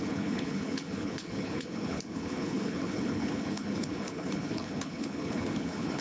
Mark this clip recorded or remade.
remade